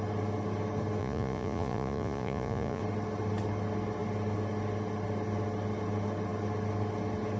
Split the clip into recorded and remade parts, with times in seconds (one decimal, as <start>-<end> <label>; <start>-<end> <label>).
0.0-1.0 recorded; 1.0-2.8 remade; 2.8-7.4 recorded